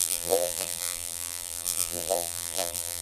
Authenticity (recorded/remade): remade